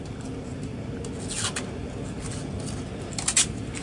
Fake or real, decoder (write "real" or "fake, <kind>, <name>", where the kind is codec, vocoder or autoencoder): real